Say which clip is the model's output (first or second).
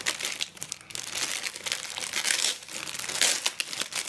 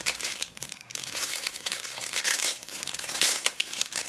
second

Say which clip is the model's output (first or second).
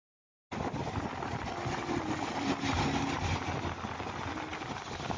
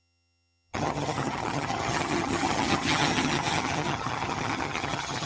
second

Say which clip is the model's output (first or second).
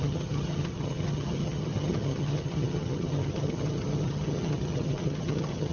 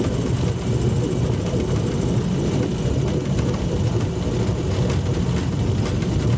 first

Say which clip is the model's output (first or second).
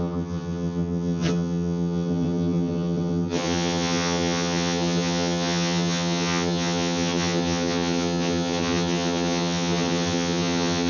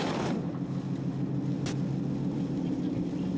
first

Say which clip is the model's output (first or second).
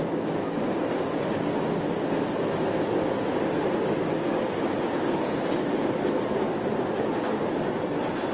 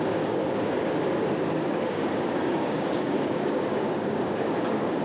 second